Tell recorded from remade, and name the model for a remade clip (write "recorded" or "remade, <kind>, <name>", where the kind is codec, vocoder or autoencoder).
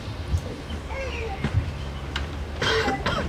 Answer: remade, vocoder, BigVGAN v2